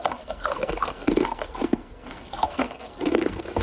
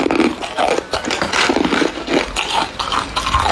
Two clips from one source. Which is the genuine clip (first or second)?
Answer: second